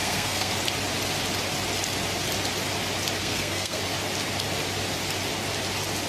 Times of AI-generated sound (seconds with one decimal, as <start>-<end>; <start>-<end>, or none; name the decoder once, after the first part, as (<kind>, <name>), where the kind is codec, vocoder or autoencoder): 0.0-0.5 (codec, SNAC); 3.2-3.8